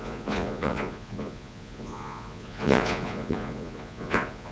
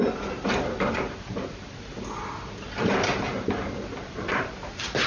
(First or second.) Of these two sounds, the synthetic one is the first